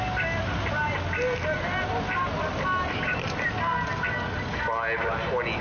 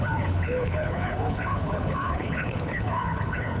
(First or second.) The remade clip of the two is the second